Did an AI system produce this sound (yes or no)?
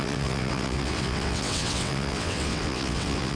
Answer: yes